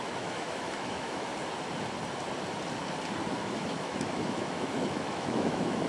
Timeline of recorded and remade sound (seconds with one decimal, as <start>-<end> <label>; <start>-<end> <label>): 0.0-1.3 remade; 1.3-3.3 recorded; 3.3-5.9 remade